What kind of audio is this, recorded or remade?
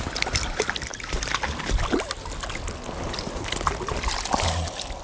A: recorded